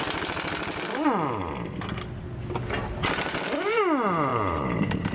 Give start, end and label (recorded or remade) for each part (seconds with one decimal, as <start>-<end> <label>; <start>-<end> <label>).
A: 0.0-4.3 recorded; 4.3-5.1 remade